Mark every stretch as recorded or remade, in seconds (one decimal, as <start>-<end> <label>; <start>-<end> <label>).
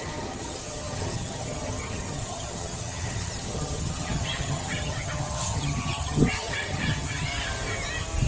0.0-7.3 remade; 7.3-8.3 recorded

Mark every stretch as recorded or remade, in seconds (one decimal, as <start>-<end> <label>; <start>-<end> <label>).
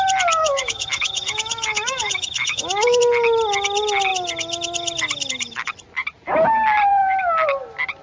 0.0-0.4 recorded; 0.4-3.0 remade; 3.0-8.0 recorded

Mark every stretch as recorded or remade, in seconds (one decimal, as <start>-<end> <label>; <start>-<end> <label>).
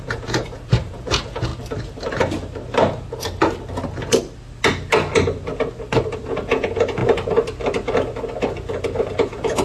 0.0-1.5 remade; 1.5-6.3 recorded; 6.3-7.0 remade; 7.0-9.0 recorded; 9.0-9.6 remade